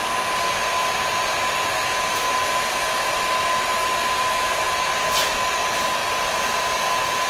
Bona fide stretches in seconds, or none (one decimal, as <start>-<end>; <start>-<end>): 0.0-7.3